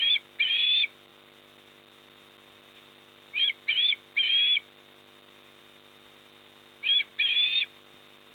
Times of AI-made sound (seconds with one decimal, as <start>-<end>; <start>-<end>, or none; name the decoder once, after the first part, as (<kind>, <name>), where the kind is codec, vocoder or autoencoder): none